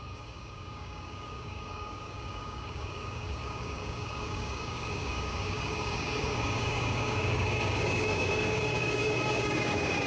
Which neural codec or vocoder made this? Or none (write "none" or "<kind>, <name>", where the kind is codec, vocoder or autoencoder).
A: codec, DAC